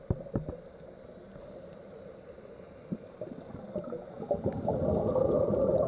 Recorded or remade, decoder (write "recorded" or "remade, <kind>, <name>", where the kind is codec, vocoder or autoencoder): recorded